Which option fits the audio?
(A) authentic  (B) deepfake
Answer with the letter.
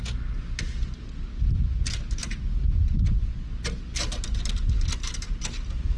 A